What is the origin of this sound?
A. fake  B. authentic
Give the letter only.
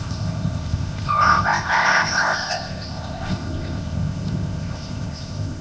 A